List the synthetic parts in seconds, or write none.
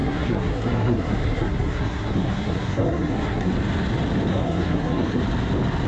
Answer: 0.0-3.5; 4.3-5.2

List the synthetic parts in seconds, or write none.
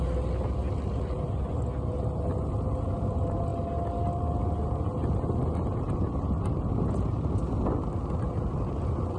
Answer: none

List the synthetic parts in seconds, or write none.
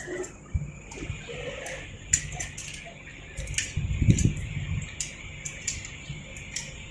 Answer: none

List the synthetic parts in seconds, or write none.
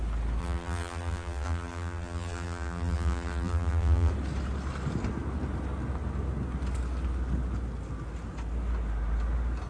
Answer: 0.4-4.1